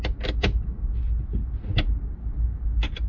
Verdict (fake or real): real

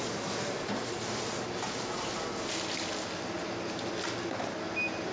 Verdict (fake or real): real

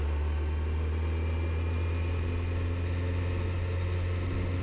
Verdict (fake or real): real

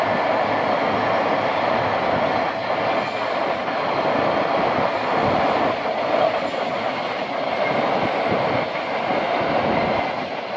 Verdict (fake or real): real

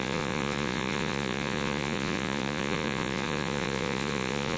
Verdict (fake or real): fake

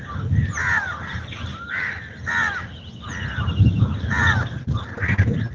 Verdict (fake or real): real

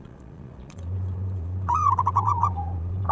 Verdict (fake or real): fake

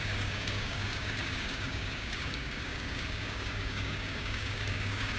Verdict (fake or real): fake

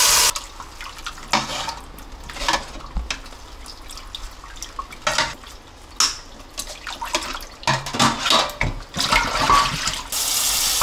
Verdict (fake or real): real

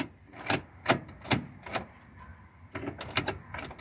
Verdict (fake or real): real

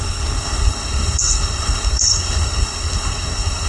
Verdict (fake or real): fake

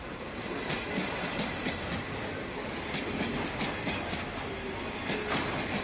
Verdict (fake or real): real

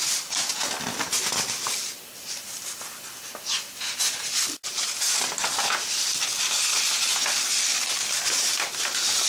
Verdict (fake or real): real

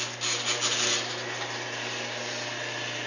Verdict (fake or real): real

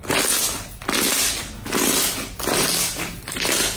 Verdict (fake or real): real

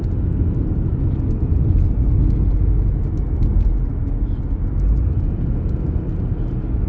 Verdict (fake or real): real